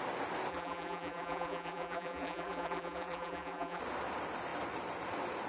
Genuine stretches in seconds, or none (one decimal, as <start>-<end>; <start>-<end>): 0.0-0.5; 3.8-5.5